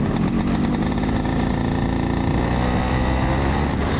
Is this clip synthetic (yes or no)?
no